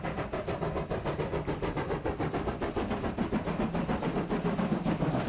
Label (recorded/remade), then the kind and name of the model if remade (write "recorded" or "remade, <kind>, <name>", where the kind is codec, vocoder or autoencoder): recorded